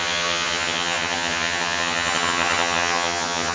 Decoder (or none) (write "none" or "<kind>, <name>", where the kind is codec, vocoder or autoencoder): vocoder, HiFi-GAN